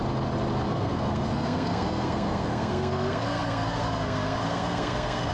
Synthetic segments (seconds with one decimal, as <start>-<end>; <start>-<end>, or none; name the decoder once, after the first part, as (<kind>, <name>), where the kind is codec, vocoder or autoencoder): 0.7-5.3 (codec, SNAC)